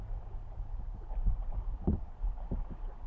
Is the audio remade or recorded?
recorded